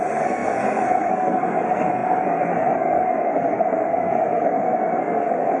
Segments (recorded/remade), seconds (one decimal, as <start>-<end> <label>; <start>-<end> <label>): 0.0-5.6 remade